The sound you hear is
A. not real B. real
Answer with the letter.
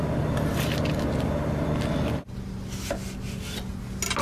B